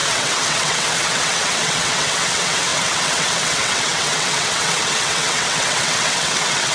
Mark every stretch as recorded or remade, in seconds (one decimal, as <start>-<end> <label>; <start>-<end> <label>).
0.0-6.7 remade